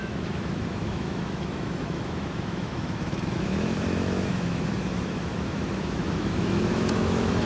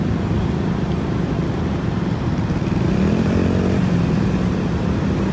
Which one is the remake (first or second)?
first